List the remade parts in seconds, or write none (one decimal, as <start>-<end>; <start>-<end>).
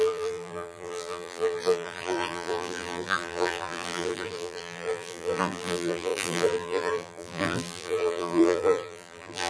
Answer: 0.0-9.5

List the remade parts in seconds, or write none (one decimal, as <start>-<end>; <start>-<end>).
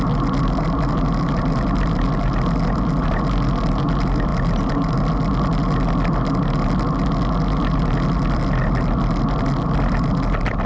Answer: none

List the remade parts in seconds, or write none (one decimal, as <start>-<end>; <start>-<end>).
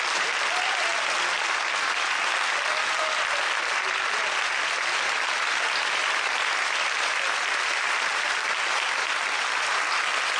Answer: 8.1-8.7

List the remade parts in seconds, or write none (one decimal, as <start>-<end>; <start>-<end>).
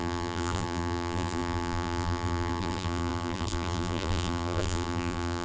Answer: 0.0-5.4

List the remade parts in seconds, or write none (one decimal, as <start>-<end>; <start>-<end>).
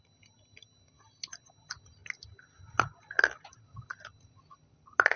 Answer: none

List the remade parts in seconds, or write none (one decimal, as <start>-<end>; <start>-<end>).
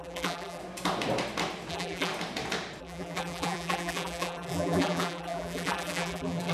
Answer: 0.0-0.6; 1.7-2.1; 2.8-6.5